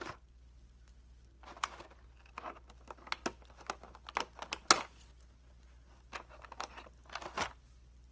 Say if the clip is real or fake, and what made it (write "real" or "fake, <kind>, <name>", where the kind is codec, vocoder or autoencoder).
real